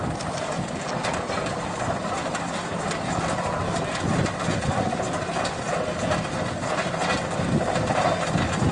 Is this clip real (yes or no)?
yes